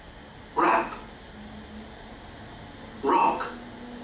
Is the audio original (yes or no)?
yes